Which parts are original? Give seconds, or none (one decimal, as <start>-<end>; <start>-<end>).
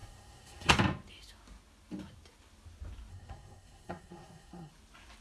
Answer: 0.7-3.1; 4.7-5.2